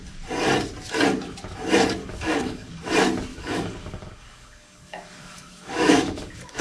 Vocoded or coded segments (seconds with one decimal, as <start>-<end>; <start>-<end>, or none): 2.0-2.8; 3.3-6.6